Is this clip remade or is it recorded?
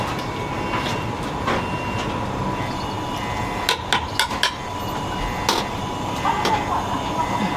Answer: recorded